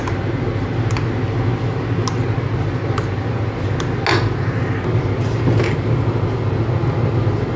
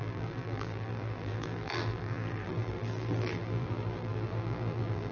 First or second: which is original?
first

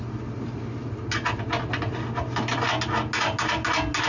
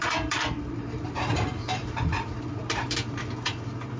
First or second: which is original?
first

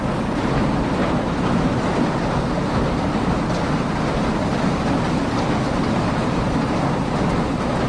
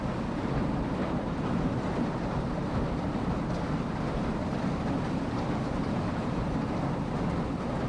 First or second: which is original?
first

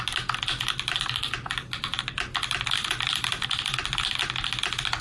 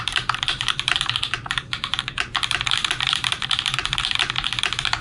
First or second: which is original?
first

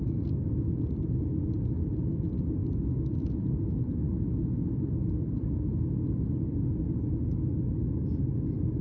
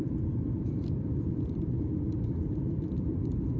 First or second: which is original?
first